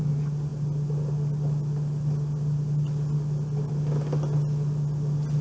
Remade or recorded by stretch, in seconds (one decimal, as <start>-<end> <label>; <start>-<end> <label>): 0.0-5.4 recorded